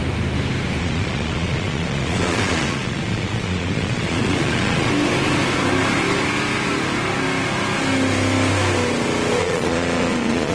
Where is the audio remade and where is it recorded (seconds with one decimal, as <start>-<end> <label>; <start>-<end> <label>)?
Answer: 0.0-0.8 recorded; 0.8-4.9 remade; 4.9-9.4 recorded; 9.4-10.5 remade